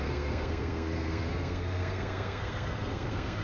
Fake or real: fake